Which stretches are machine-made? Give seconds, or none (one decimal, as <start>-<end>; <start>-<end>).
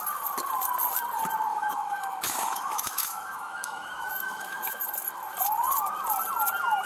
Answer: 1.5-4.8